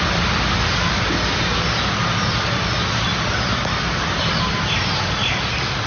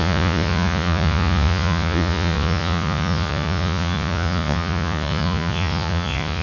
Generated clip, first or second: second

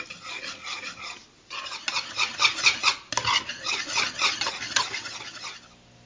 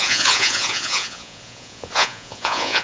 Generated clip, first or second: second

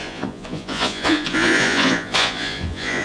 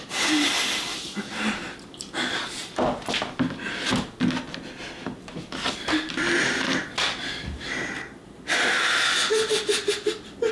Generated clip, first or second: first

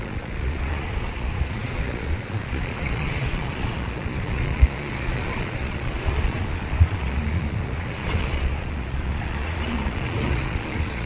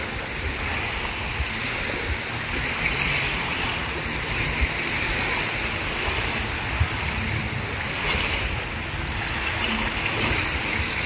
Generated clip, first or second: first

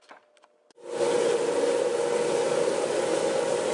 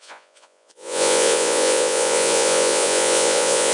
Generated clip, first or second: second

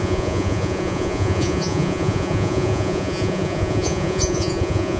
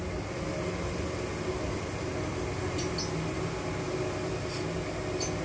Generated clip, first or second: first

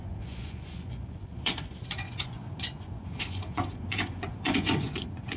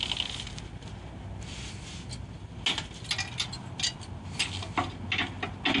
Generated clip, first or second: first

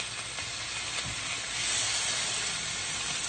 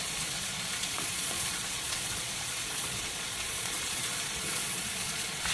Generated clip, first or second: second